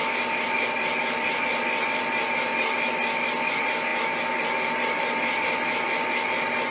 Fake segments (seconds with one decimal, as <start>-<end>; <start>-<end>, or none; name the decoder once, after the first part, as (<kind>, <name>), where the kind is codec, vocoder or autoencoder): none